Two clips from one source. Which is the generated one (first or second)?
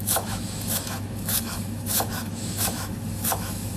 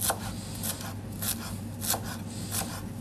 first